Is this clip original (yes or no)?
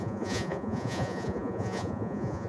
no